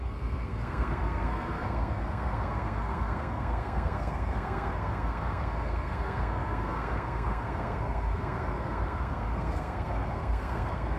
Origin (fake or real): fake